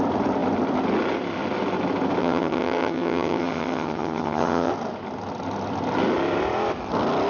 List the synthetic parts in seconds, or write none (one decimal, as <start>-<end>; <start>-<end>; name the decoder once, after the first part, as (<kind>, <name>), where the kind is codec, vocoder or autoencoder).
2.2-4.7 (vocoder, HiFi-GAN)